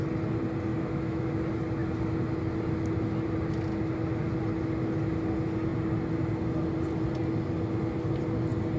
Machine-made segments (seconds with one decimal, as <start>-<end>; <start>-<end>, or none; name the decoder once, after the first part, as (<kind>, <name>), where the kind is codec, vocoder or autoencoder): 0.7-1.3 (autoencoder, DAC-VAE)